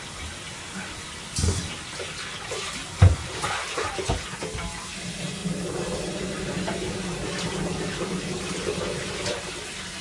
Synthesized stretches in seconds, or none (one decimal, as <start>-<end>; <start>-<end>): none